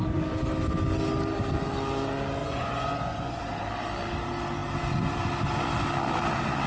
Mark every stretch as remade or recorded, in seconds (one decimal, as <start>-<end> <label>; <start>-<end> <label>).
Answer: 0.0-2.4 recorded; 2.4-3.4 remade; 3.4-6.7 recorded